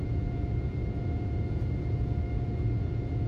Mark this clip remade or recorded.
remade